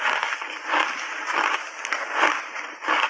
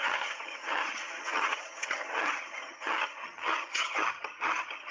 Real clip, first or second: first